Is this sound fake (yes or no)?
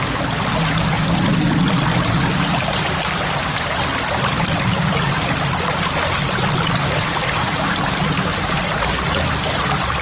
no